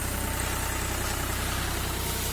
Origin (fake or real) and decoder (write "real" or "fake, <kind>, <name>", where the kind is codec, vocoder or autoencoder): real